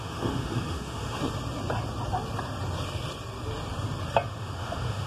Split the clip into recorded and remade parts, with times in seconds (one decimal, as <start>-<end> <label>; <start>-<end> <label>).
0.0-1.2 remade; 1.2-4.3 recorded; 4.3-5.1 remade